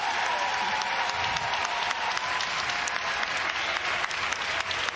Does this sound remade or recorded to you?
recorded